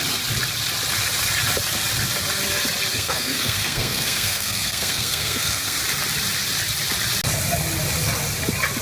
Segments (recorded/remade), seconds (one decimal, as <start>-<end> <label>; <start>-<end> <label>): 0.0-2.9 recorded; 2.9-5.8 remade; 5.8-8.8 recorded